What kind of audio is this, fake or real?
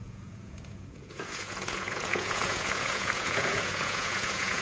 fake